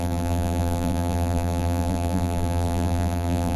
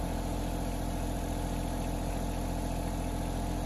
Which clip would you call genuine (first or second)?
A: second